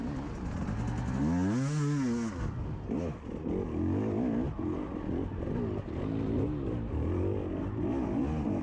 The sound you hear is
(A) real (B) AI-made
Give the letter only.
A